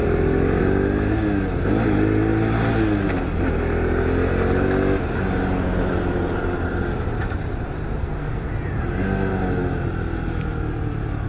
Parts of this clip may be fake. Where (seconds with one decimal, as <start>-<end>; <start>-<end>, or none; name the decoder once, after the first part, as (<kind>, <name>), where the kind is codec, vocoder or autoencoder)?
8.0-8.5 (codec, SNAC)